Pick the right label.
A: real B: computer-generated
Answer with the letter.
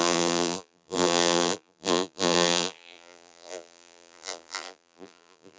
B